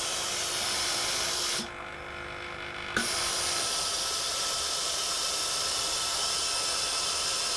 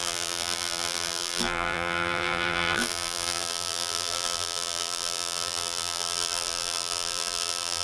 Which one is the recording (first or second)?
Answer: first